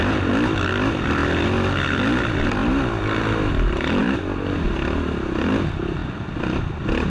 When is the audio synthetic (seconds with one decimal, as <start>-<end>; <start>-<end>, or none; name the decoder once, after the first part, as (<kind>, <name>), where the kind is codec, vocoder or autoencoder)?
none